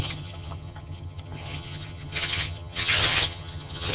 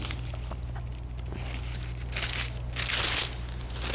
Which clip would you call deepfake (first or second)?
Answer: first